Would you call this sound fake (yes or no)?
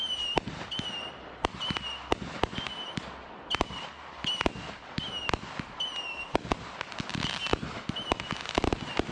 no